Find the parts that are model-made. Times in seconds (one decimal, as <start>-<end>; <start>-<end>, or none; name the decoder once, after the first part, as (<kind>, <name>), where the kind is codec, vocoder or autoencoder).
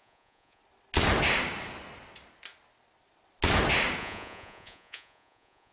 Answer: 0.0-0.6 (vocoder, Vocos); 4.0-5.7